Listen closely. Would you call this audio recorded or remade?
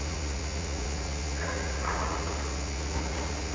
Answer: remade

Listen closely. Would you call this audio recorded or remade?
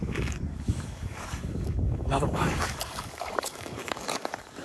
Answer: remade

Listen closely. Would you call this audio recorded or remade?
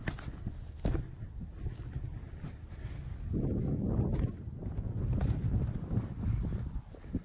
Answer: recorded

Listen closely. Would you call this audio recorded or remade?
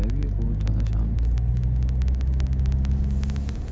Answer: recorded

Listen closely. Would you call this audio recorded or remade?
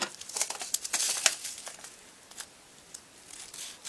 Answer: recorded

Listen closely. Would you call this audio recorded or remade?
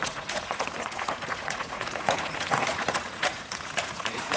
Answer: remade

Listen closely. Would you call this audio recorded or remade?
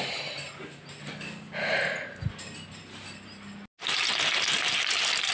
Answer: recorded